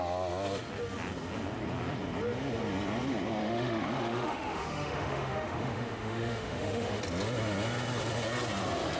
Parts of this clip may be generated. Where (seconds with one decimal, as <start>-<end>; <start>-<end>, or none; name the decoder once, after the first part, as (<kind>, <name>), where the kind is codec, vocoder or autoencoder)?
3.4-7.0 (autoencoder, DAC-VAE)